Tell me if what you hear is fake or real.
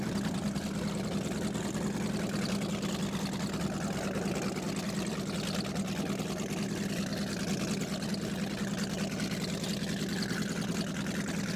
real